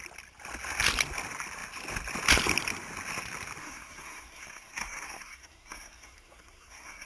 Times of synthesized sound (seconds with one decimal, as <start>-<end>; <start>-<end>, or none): 3.6-7.1